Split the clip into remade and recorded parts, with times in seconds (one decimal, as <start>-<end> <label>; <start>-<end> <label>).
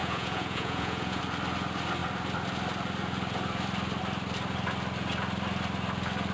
0.0-1.2 remade; 1.2-6.3 recorded